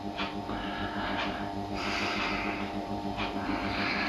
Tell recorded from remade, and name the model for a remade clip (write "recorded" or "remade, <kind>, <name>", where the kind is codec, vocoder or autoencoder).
remade, vocoder, BigVGAN v2